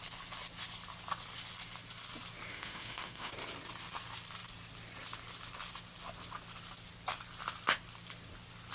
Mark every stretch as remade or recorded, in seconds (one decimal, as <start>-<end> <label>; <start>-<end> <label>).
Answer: 0.0-2.5 recorded; 2.5-3.3 remade; 3.3-8.7 recorded